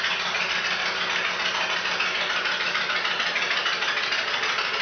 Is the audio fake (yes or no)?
no